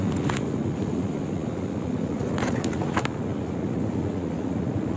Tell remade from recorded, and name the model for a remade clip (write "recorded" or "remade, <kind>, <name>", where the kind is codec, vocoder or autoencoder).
remade, vocoder, Vocos